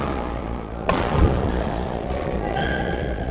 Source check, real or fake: fake